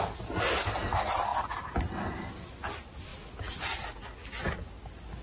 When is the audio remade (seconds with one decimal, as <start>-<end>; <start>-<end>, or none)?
none